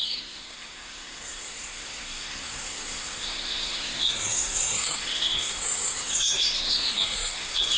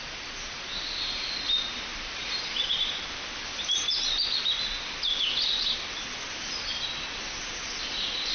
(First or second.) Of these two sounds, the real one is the second